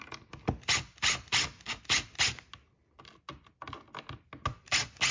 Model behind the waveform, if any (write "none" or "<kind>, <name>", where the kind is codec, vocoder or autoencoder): none